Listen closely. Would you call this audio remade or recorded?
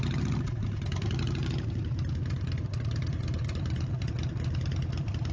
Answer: remade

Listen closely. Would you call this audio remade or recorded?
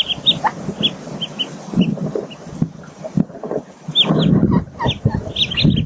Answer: recorded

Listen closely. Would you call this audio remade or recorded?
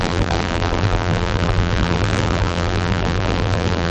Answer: remade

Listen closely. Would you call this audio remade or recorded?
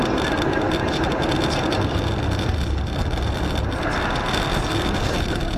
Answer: recorded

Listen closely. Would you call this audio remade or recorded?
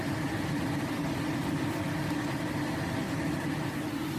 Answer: recorded